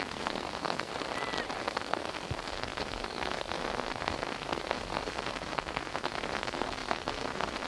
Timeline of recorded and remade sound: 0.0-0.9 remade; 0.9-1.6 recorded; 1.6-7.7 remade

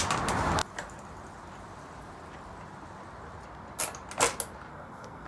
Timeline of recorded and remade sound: 0.0-4.7 recorded; 4.7-5.3 remade

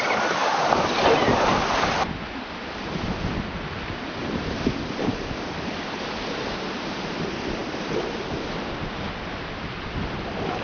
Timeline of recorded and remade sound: 0.0-10.6 recorded

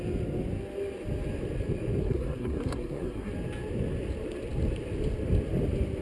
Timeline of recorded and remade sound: 0.0-2.0 recorded; 2.0-3.3 remade; 3.3-6.0 recorded

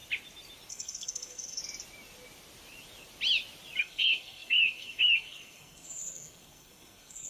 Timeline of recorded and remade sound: 0.0-0.7 recorded; 0.7-1.6 remade; 1.6-3.8 recorded; 3.8-7.3 remade